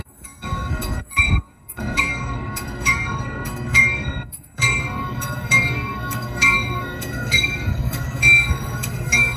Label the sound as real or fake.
fake